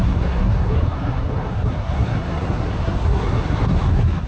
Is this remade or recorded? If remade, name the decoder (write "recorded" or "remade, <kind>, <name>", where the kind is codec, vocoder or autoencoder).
remade, codec, SNAC